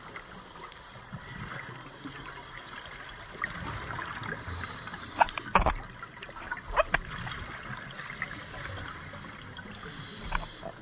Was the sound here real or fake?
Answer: real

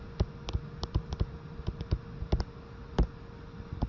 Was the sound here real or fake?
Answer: real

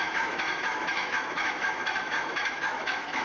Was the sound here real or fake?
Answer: fake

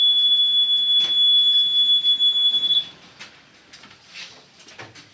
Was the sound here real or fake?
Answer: real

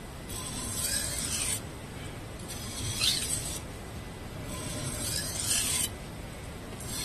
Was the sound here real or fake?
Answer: real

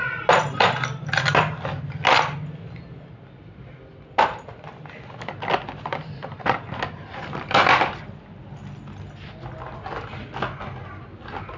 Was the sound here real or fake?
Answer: real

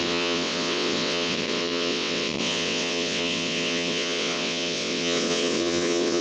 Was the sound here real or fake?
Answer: fake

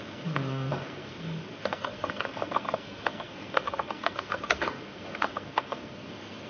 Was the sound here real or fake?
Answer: fake